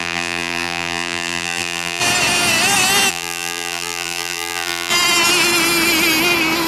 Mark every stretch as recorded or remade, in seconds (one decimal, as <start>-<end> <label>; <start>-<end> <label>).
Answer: 0.0-2.0 remade; 2.0-3.1 recorded; 3.1-4.9 remade; 4.9-6.7 recorded